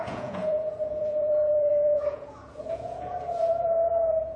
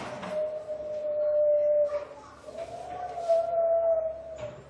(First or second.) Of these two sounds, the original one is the second